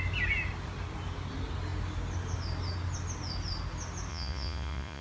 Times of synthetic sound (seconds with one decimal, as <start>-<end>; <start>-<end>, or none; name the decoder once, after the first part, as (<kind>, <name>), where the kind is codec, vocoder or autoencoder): 4.1-5.0 (vocoder, Vocos)

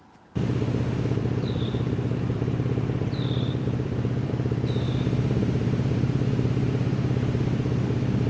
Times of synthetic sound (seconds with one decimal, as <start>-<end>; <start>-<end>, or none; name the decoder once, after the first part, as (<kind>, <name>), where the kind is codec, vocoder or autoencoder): 1.2-4.3 (vocoder, BigVGAN v2)

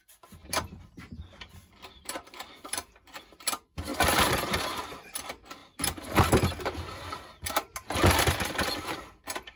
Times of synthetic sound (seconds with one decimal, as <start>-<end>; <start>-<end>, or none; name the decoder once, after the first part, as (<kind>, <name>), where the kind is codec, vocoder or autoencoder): 0.0-5.6 (vocoder, BigVGAN v2); 8.2-9.6

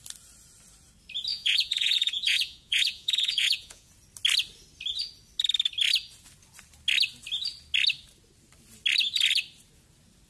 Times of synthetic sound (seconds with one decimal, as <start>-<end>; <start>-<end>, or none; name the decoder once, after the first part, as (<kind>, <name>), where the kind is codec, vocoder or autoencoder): 1.3-3.9 (vocoder, Vocos)

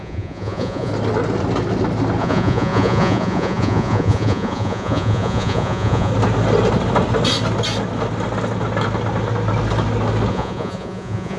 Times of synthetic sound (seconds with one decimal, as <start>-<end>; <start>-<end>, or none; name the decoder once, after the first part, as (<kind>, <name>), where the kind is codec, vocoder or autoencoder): 0.0-0.9 (vocoder, Vocos); 2.2-6.1; 10.3-11.4

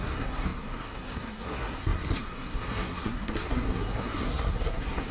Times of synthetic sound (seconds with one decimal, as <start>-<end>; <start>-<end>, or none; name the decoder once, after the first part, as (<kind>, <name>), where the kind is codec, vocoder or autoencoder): 0.0-5.1 (codec, SNAC)